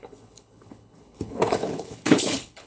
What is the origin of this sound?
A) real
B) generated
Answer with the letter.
B